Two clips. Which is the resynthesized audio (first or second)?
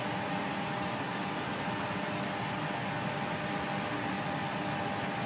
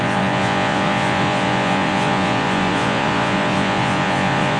second